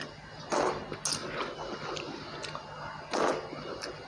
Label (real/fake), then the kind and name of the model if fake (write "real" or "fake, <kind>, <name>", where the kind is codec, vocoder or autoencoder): real